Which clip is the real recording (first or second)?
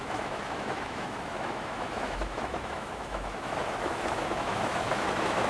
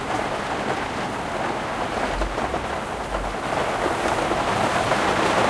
second